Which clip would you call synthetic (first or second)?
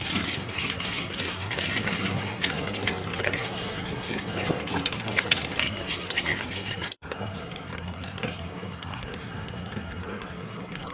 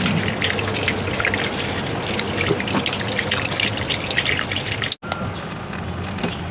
first